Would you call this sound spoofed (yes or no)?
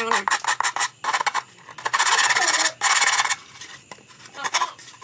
no